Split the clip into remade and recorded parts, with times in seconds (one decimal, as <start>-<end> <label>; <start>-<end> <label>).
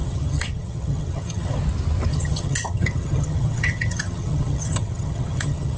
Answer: 0.0-1.6 remade; 1.6-2.1 recorded; 2.1-5.8 remade